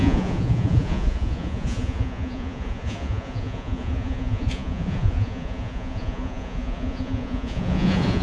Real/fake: fake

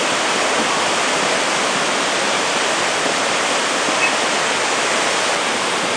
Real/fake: real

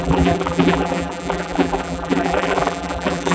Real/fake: fake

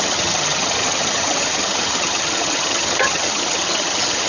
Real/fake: fake